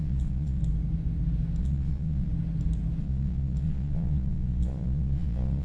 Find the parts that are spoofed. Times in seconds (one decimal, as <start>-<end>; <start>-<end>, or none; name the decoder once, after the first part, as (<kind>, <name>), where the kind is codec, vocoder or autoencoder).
0.0-0.6 (vocoder, Vocos); 1.6-2.3; 3.0-5.6